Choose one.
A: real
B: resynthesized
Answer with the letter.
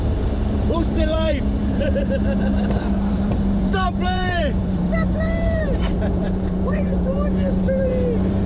B